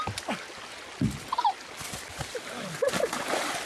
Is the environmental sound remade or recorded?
recorded